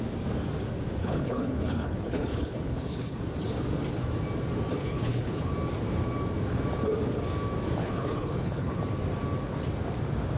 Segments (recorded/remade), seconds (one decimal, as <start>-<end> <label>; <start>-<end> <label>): 0.0-1.0 recorded; 1.0-3.2 remade; 3.2-4.8 recorded; 4.8-5.5 remade; 5.5-7.8 recorded; 7.8-8.8 remade; 8.8-10.4 recorded